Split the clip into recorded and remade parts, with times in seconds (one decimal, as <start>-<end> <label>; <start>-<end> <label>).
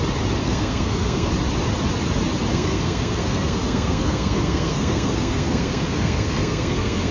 0.0-0.4 recorded; 0.4-1.3 remade; 1.3-2.5 recorded; 2.5-7.1 remade